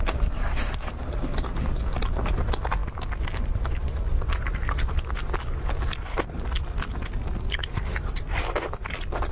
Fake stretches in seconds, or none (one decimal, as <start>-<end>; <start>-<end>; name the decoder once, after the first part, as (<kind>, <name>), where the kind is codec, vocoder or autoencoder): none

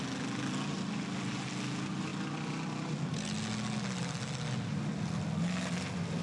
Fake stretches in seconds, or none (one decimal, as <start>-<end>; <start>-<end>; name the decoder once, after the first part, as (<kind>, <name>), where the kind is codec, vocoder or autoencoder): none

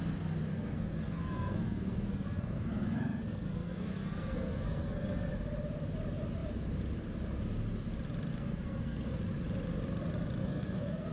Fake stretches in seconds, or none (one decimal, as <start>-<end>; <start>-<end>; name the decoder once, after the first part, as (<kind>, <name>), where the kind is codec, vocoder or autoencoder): 0.5-5.3 (codec, SNAC); 8.3-9.2; 10.4-11.1

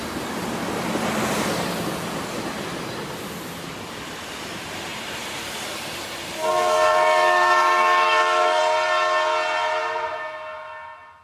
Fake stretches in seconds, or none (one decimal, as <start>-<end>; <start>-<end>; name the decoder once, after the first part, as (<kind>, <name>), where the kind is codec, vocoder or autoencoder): 6.4-8.6 (codec, SNAC)